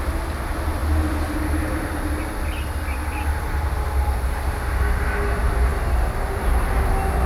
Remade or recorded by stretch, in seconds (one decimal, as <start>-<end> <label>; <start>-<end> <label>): 0.0-7.3 recorded